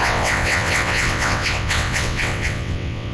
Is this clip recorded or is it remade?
remade